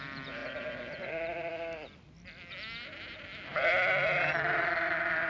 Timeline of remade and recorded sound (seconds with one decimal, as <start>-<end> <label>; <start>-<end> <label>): 0.0-5.3 recorded